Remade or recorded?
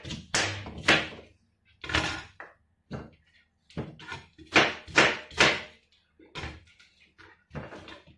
recorded